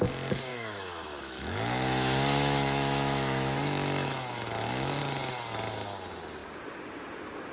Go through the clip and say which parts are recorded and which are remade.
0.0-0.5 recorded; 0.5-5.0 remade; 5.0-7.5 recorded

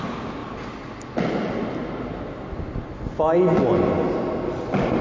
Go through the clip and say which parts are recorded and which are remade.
0.0-5.0 recorded

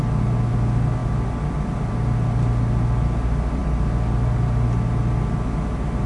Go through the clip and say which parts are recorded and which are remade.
0.0-6.1 recorded